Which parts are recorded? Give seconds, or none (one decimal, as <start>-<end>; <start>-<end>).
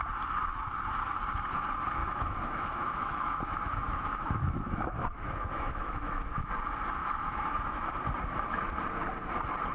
0.0-2.0; 6.5-7.0; 7.9-9.7